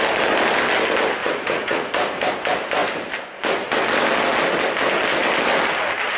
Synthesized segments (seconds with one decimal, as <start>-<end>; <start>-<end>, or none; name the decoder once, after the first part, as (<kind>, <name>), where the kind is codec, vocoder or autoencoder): 1.2-1.9 (vocoder, Vocos)